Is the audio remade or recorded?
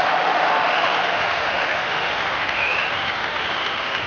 remade